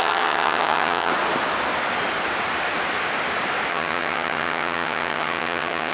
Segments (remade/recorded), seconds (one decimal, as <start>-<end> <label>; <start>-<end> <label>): 0.0-1.1 remade; 1.1-3.7 recorded; 3.7-5.9 remade